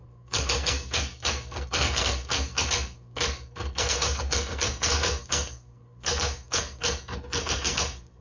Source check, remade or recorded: remade